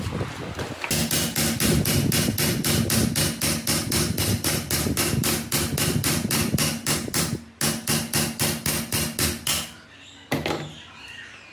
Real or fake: real